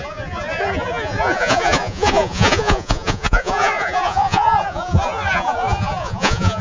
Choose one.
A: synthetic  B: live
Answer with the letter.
A